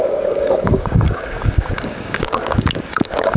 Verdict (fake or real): fake